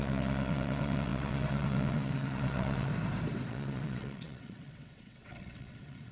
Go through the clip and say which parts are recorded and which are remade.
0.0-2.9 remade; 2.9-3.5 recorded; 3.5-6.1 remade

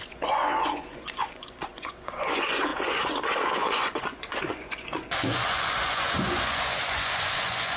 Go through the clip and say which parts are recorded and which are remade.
0.0-7.8 remade